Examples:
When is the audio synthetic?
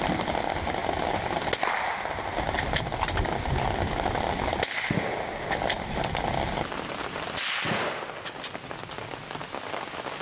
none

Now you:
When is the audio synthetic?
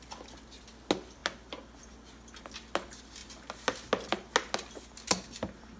none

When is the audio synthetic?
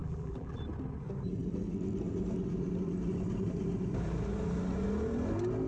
0.0-0.6 (vocoder, BigVGAN v2)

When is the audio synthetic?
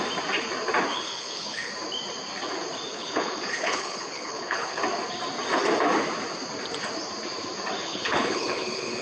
0.9-1.7 (codec, HILCodec); 2.9-4.8; 7.8-9.0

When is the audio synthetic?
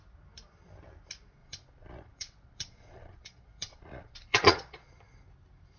1.4-4.9 (vocoder, Vocos)